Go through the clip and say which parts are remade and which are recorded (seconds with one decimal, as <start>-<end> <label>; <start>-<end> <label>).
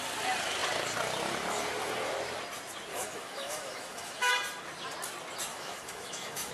0.0-2.9 recorded; 2.9-4.3 remade; 4.3-5.5 recorded; 5.5-6.5 remade